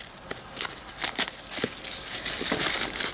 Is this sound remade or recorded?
recorded